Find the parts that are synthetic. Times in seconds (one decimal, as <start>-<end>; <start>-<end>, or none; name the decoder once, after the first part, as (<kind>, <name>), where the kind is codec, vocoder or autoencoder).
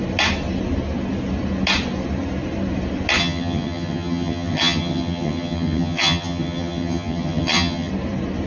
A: 3.2-7.9 (vocoder, HiFi-GAN)